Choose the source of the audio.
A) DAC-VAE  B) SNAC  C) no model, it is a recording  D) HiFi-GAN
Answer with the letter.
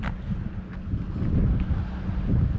C